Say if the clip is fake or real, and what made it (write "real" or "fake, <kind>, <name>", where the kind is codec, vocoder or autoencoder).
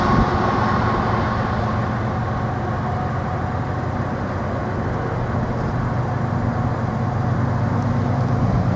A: real